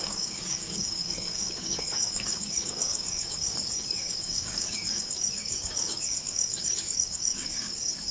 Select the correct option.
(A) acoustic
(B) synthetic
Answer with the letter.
B